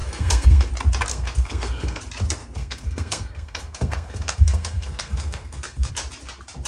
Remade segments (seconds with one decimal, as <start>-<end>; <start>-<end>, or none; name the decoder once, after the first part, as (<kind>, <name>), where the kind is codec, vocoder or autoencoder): 0.0-0.7 (codec, SNAC); 1.1-2.0; 2.4-5.9